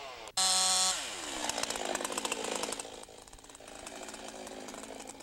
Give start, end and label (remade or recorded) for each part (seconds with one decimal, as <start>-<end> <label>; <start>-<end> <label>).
0.0-5.2 recorded